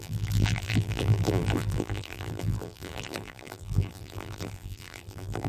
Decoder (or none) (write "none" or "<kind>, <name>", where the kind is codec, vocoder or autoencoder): vocoder, BigVGAN v2